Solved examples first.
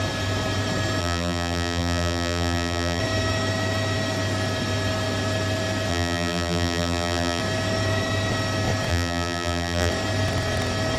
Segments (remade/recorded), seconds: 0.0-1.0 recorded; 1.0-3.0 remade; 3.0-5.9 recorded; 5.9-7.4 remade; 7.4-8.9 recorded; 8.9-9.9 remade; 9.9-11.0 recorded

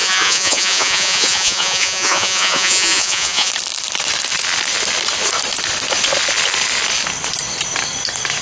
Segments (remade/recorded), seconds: 0.0-3.5 remade; 3.5-8.4 recorded

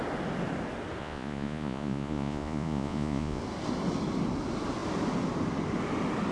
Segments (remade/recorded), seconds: 0.0-1.0 recorded; 1.0-3.4 remade; 3.4-6.3 recorded

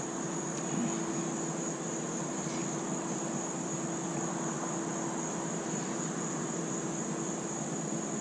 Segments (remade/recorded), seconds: 0.0-8.2 recorded

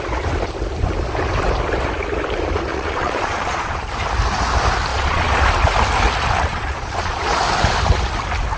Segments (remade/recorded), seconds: 0.0-2.7 recorded; 2.7-3.8 remade; 3.8-4.9 recorded; 4.9-5.4 remade; 5.4-6.5 recorded; 6.5-7.4 remade; 7.4-8.6 recorded

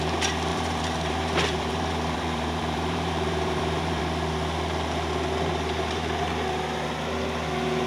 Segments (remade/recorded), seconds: 0.0-0.5 recorded; 0.5-4.0 remade; 4.0-5.5 recorded; 5.5-6.3 remade; 6.3-7.9 recorded